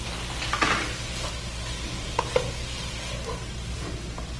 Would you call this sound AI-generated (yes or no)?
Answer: no